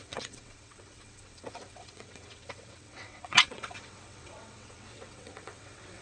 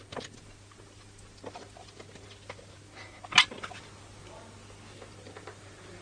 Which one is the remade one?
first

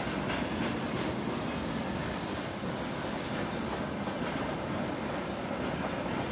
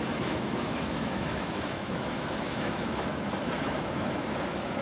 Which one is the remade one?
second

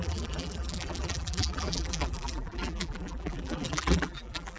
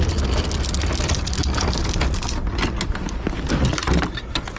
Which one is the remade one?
first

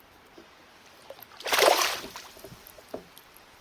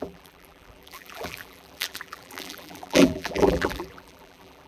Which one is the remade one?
second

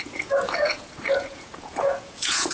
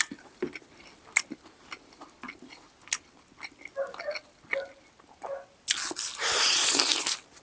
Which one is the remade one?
first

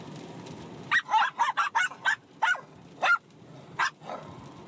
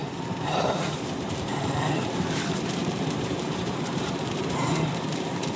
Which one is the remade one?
second